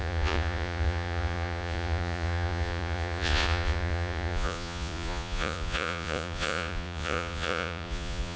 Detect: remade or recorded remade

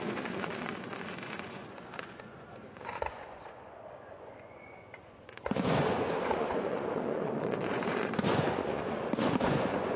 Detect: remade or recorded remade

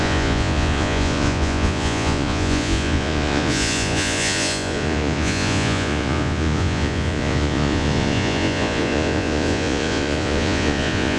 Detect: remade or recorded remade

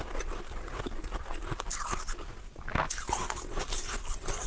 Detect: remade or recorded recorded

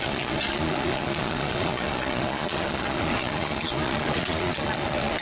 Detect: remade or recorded remade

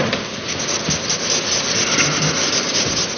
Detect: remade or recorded recorded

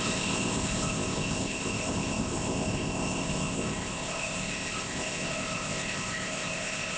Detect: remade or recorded remade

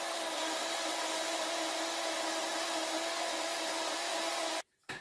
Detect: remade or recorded recorded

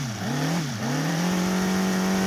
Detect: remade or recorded remade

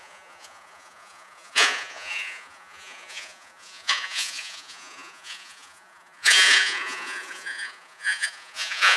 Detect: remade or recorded remade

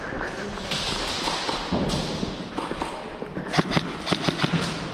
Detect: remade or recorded remade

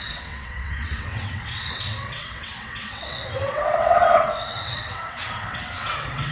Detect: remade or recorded remade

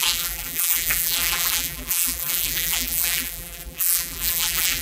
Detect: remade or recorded remade